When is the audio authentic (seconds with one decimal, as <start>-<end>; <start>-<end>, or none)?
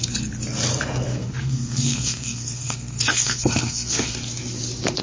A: 0.0-1.1; 4.1-5.0